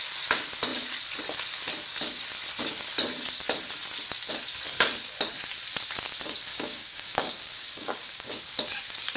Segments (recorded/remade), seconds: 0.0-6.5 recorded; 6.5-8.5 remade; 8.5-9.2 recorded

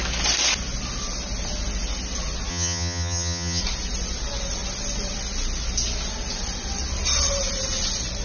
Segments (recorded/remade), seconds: 0.0-2.5 recorded; 2.5-3.6 remade; 3.6-8.2 recorded

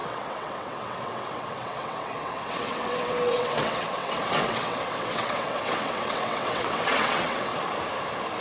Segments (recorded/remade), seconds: 0.0-7.5 remade; 7.5-8.4 recorded

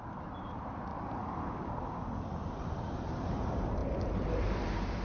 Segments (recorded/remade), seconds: 0.0-0.9 remade; 0.9-2.5 recorded; 2.5-3.8 remade; 3.8-4.4 recorded; 4.4-5.0 remade